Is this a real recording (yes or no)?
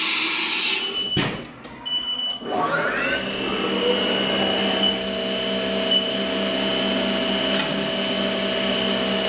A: yes